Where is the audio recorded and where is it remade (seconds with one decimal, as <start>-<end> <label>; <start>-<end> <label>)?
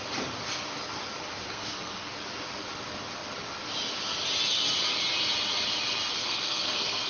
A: 0.0-1.5 recorded; 1.5-2.1 remade; 2.1-6.1 recorded; 6.1-7.1 remade